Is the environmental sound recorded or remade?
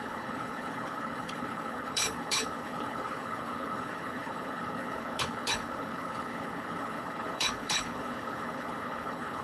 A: remade